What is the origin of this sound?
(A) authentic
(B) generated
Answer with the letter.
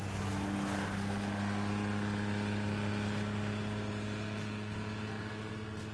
A